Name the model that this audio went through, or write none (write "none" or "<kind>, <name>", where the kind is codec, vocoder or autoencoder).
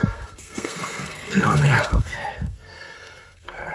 codec, SNAC